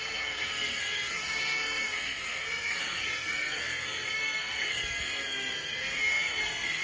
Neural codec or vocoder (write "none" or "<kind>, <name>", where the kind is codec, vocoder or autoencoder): codec, SNAC